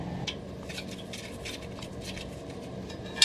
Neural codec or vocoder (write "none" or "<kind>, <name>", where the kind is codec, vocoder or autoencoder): none